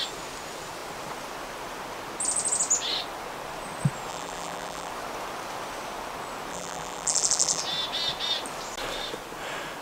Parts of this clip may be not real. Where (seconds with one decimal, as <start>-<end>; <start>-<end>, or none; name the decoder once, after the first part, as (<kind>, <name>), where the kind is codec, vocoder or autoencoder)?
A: 4.1-4.9 (vocoder, BigVGAN v2); 6.5-7.6